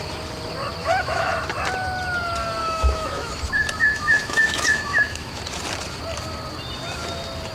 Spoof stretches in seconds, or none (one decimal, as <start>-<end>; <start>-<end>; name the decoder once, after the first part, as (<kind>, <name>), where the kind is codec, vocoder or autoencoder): 0.8-1.3 (autoencoder, DAC-VAE); 2.6-3.3; 3.8-5.4